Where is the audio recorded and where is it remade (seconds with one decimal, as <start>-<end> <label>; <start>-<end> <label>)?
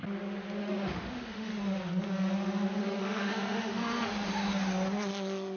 0.0-0.6 recorded; 0.6-1.5 remade; 1.5-2.8 recorded; 2.8-3.8 remade; 3.8-5.6 recorded